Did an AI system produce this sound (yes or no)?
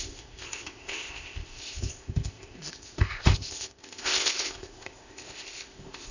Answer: yes